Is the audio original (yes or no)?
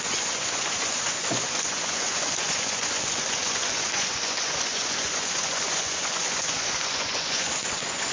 no